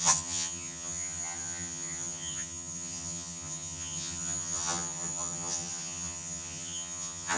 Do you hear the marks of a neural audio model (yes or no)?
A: yes